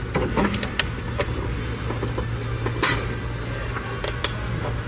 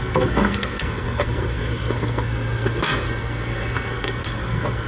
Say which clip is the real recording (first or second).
first